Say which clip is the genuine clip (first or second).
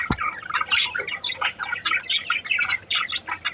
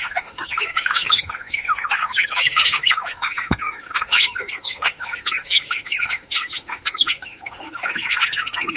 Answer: first